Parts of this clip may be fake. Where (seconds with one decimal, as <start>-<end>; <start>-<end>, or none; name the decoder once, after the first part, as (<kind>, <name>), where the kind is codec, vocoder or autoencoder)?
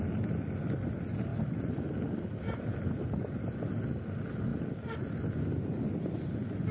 none